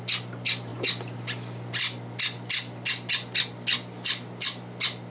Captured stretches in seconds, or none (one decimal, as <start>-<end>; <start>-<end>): 0.0-5.1